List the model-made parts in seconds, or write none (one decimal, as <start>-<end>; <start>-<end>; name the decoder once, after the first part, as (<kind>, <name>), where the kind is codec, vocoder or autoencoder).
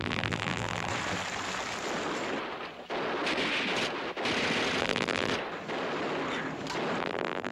0.0-0.9 (vocoder, BigVGAN v2); 4.8-5.3; 7.0-7.5